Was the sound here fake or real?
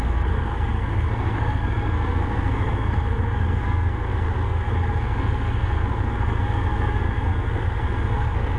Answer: fake